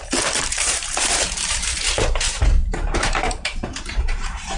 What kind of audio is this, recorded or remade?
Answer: remade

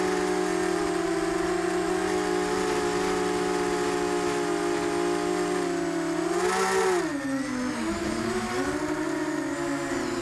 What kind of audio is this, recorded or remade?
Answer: recorded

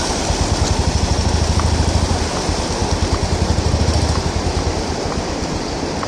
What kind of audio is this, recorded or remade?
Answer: recorded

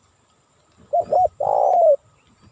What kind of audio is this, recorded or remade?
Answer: recorded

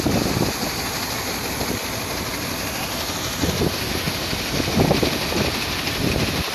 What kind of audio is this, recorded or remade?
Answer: recorded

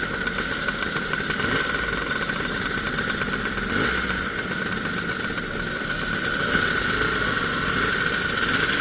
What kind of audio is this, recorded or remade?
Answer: remade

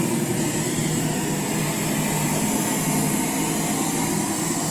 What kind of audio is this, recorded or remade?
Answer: recorded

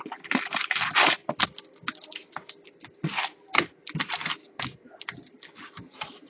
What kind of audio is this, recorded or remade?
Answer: recorded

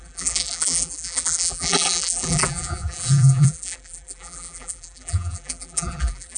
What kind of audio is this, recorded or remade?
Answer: remade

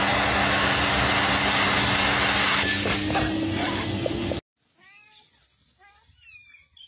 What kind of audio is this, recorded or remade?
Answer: recorded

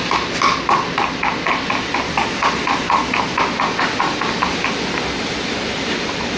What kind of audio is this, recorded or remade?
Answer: recorded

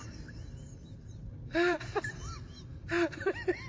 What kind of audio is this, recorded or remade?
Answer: remade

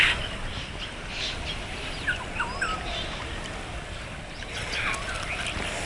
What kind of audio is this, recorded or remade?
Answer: recorded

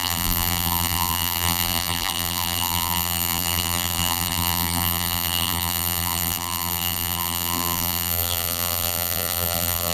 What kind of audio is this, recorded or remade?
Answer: remade